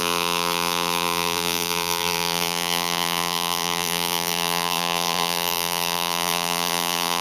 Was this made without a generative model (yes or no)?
no